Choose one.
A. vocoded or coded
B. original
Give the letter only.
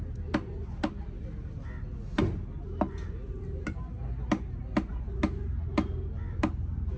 B